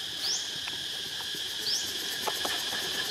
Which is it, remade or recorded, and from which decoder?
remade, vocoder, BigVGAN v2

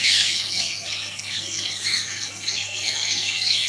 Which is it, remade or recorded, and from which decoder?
remade, codec, SNAC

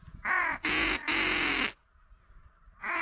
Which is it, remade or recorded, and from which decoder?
recorded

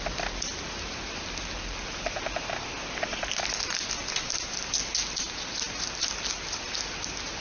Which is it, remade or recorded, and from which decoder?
recorded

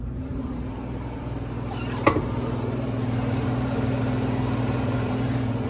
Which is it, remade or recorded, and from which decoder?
remade, vocoder, BigVGAN v2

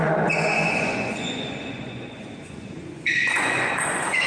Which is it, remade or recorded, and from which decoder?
remade, vocoder, Vocos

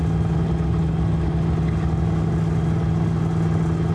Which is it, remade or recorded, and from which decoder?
recorded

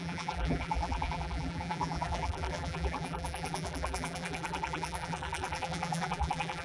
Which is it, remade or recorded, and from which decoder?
remade, vocoder, BigVGAN v2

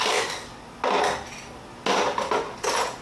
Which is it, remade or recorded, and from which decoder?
recorded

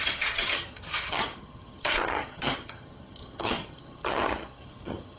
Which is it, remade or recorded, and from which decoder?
remade, vocoder, HiFi-GAN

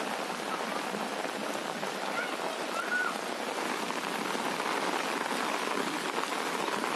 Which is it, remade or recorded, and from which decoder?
recorded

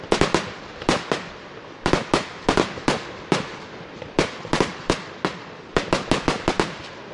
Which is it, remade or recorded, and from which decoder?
recorded